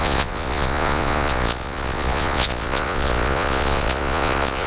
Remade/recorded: remade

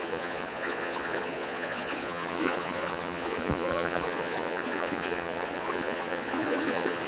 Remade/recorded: remade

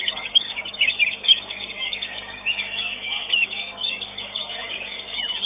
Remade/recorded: remade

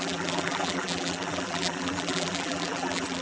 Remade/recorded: remade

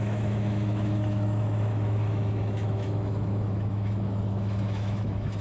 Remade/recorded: remade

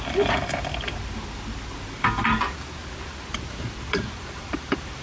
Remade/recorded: remade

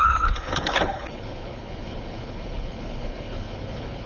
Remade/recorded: remade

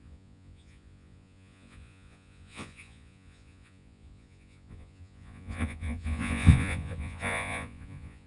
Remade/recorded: remade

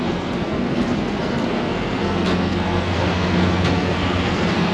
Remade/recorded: remade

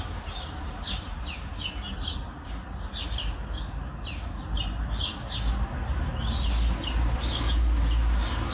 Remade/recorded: recorded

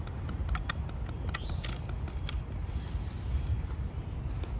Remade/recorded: recorded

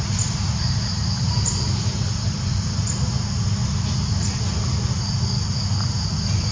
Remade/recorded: recorded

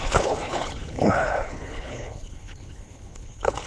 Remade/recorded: remade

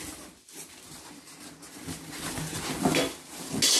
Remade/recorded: recorded